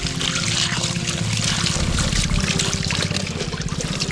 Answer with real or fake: real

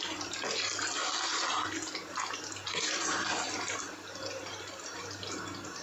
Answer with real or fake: real